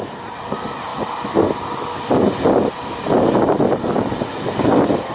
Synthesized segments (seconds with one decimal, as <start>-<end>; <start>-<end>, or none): none